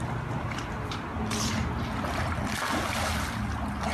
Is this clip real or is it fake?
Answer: real